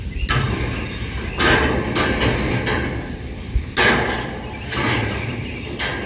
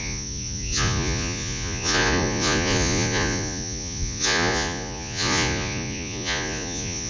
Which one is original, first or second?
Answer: first